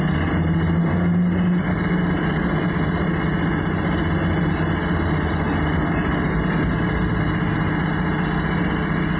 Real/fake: real